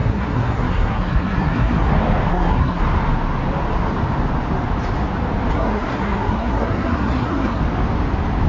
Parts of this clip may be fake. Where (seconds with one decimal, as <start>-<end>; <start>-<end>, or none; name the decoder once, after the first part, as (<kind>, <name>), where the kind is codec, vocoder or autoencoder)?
0.0-1.9 (codec, SNAC); 2.3-2.8; 5.5-7.6